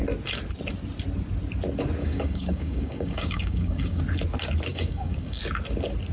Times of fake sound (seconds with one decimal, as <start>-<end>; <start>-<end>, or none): 2.0-4.0; 4.7-5.4